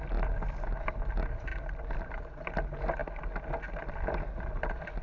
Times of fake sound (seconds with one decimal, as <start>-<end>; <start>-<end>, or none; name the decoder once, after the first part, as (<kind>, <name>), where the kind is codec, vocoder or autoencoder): none